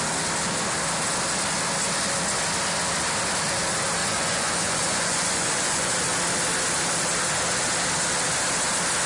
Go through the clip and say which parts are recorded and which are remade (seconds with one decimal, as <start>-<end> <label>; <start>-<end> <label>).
0.0-4.0 recorded; 4.0-5.9 remade; 5.9-9.1 recorded

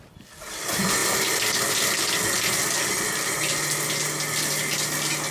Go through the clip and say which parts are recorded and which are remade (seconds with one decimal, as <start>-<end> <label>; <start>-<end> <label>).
0.0-5.3 recorded

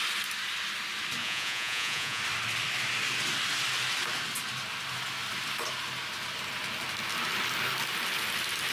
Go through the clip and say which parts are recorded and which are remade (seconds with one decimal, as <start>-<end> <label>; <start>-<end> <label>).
0.0-1.2 recorded; 1.2-2.2 remade; 2.2-8.7 recorded

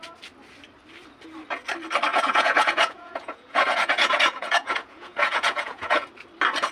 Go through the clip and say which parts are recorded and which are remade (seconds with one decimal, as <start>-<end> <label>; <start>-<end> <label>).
0.0-2.1 recorded; 2.1-6.1 remade; 6.1-6.7 recorded

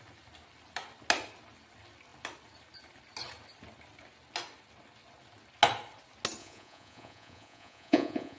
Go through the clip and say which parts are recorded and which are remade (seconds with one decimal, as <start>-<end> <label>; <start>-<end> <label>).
0.0-6.4 recorded; 6.4-8.4 remade

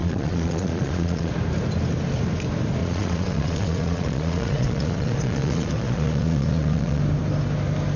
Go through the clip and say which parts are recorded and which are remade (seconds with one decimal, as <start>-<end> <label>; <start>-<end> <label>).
0.0-1.3 remade; 1.3-2.8 recorded; 2.8-7.0 remade; 7.0-8.0 recorded

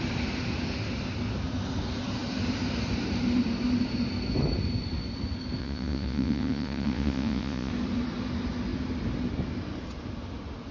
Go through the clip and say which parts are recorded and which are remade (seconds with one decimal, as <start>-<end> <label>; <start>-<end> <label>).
0.0-5.6 recorded; 5.6-7.7 remade; 7.7-10.7 recorded

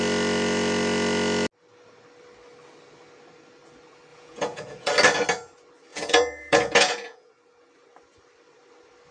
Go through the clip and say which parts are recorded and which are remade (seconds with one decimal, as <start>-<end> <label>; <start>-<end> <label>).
0.0-4.1 recorded; 4.1-4.9 remade; 4.9-5.9 recorded; 5.9-7.3 remade; 7.3-9.1 recorded